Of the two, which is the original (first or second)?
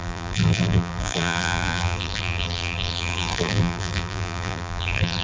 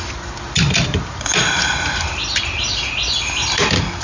second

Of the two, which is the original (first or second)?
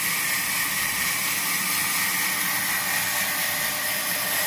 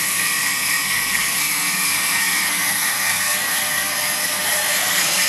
first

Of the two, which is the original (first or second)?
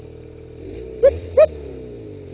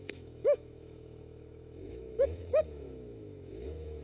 first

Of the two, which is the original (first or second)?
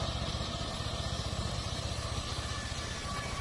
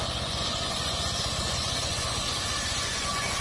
first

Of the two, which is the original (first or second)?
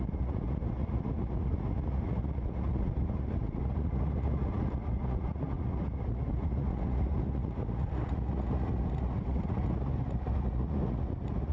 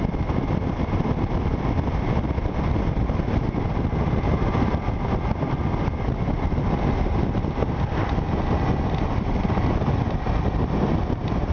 second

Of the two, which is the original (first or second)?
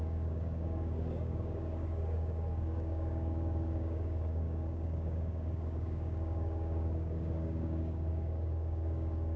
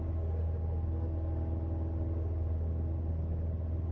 second